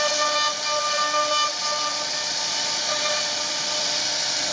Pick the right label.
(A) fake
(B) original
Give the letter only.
B